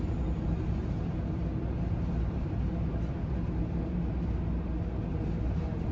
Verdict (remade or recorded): recorded